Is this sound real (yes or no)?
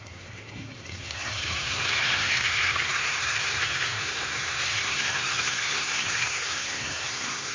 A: no